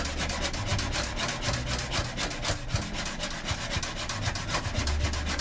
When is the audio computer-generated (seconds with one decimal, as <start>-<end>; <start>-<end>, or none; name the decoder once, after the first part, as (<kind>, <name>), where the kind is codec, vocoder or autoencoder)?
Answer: none